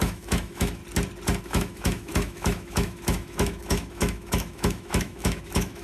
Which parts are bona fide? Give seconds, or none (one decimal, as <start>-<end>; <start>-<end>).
0.8-1.4